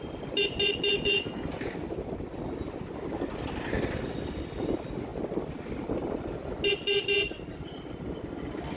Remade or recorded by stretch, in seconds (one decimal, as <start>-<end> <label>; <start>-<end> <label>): 0.0-0.9 recorded; 0.9-1.5 remade; 1.5-8.8 recorded